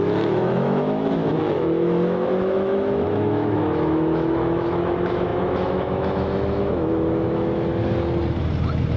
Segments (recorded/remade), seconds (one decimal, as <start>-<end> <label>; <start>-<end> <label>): 0.0-7.7 remade; 7.7-9.0 recorded